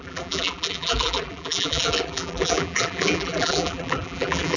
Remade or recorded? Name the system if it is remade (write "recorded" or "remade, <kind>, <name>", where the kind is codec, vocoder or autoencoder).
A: remade, vocoder, BigVGAN v2